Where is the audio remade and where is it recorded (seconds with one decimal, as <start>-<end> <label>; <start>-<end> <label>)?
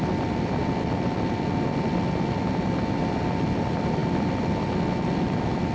0.0-0.6 remade; 0.6-2.4 recorded; 2.4-5.7 remade